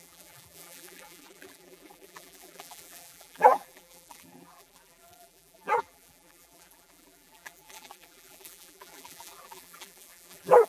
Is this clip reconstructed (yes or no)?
yes